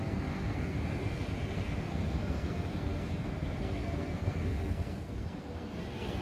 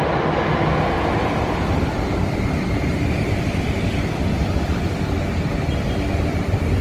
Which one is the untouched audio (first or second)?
second